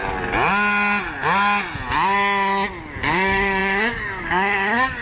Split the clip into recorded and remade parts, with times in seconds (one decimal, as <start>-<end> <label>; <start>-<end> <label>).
0.0-3.0 recorded; 3.0-5.0 remade